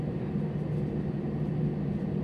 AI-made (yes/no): no